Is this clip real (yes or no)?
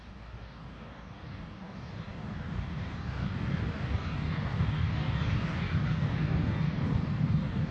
no